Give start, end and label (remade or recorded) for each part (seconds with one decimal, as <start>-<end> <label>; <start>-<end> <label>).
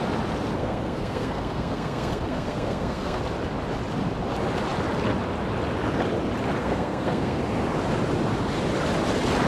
0.0-0.6 recorded; 0.6-3.2 remade; 3.2-6.6 recorded; 6.6-7.4 remade; 7.4-9.5 recorded